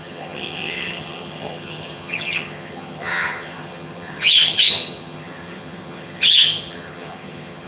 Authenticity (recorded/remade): remade